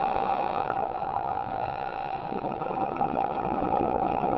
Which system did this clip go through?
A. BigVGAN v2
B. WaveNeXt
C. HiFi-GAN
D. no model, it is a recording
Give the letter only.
B